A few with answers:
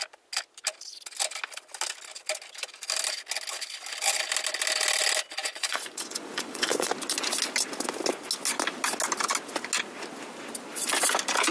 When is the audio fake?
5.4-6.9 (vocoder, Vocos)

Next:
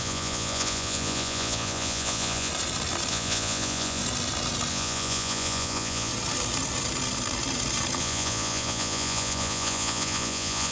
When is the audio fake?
0.0-2.5 (vocoder, Vocos); 3.1-4.0; 4.7-6.1; 8.0-10.7

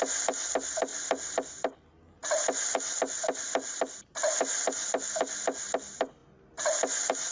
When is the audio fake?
none

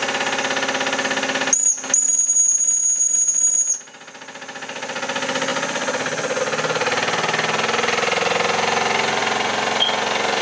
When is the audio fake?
none

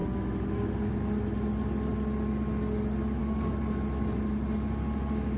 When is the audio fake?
none